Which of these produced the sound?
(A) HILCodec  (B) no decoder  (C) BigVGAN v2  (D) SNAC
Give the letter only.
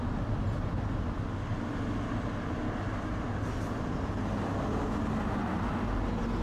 B